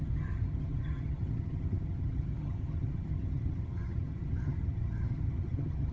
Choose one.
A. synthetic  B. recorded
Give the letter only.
A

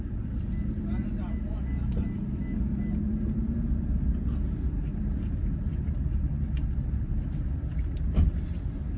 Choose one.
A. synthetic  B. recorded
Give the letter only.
B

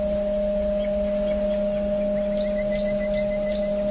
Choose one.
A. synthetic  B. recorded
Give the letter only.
B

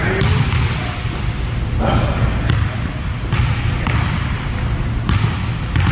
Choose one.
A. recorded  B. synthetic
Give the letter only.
A